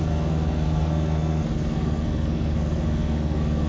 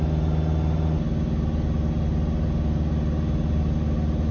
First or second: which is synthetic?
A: first